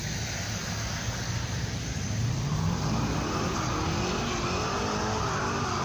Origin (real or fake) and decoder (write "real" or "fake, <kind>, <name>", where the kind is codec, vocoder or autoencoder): real